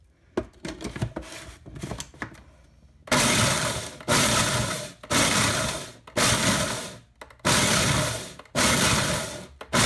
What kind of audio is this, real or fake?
real